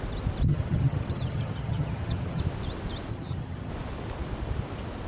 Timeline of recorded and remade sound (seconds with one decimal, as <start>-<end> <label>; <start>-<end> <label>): 0.0-0.5 recorded; 0.5-2.4 remade; 2.4-3.1 recorded; 3.1-3.7 remade; 3.7-5.1 recorded